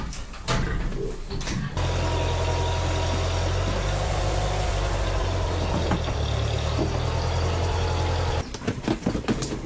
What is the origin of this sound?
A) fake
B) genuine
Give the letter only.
B